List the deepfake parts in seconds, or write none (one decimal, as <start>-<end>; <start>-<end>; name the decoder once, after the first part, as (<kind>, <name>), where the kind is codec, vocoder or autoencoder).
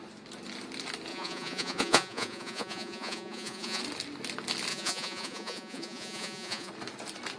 1.1-3.8 (vocoder, Vocos); 4.7-6.7